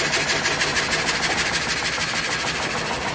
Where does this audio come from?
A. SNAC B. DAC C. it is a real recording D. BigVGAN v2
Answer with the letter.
C